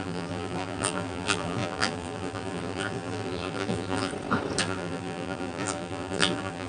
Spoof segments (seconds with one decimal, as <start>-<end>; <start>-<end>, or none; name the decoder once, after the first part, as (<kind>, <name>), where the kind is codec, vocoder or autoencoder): 0.0-4.1 (vocoder, BigVGAN v2); 4.6-6.7